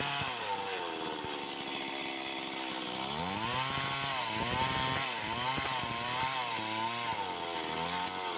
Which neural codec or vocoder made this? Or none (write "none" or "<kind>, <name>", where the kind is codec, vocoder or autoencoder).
none